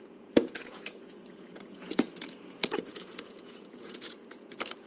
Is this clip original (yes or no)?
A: no